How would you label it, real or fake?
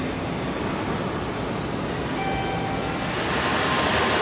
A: real